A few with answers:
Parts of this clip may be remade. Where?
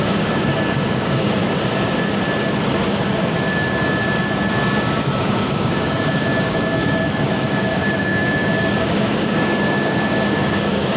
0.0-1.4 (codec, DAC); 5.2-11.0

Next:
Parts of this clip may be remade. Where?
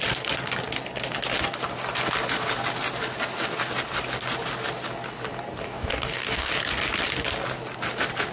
5.6-6.5 (codec, DAC)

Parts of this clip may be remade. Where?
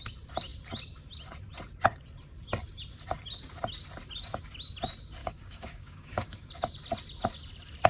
5.2-6.5 (codec, DAC)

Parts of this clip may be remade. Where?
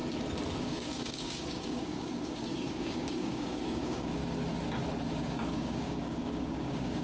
0.6-4.2 (codec, DAC); 5.3-7.0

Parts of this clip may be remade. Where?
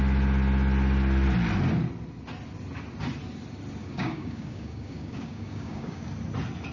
3.8-6.1 (codec, DAC)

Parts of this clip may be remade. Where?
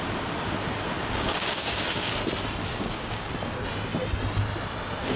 1.0-2.1 (codec, DAC); 2.6-3.3